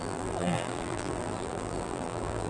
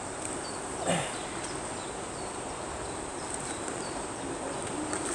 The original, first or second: second